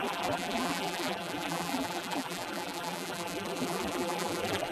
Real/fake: fake